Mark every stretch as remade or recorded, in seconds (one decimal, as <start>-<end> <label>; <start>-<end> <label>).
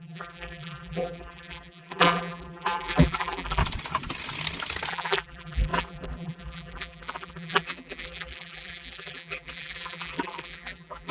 0.0-3.6 remade; 3.6-4.9 recorded; 4.9-11.1 remade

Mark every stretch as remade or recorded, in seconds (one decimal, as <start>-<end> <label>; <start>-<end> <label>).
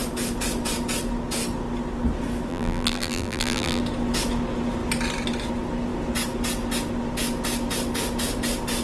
0.0-2.5 recorded; 2.5-3.8 remade; 3.8-8.8 recorded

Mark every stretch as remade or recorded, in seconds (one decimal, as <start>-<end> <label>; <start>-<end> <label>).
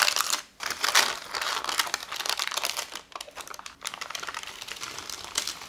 0.0-2.0 recorded; 2.0-4.5 remade; 4.5-5.7 recorded